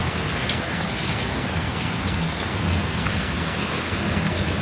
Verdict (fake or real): fake